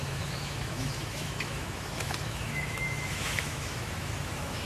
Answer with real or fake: fake